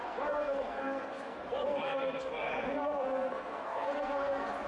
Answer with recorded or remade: remade